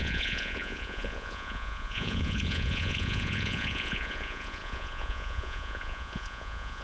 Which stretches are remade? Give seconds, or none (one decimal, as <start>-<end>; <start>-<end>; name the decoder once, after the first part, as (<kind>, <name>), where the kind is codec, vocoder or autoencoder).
0.0-6.8 (vocoder, Vocos)